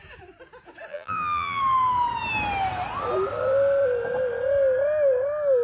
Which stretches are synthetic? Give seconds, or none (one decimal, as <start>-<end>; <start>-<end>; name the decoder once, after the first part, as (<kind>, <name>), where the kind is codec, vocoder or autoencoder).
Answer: 0.9-1.6 (vocoder, BigVGAN v2)